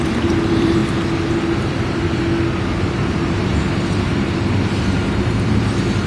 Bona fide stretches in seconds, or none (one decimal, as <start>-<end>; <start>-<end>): 0.8-2.8